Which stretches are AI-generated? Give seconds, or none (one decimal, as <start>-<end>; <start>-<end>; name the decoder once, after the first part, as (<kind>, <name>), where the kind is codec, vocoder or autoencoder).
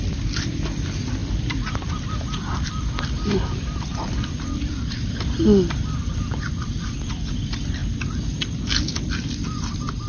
0.0-7.8 (vocoder, BigVGAN v2); 9.0-10.1